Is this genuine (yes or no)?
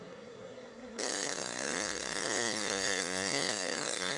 no